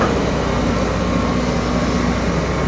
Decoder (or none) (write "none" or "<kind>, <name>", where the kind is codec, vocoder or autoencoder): none